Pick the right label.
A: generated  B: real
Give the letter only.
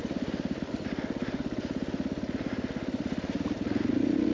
B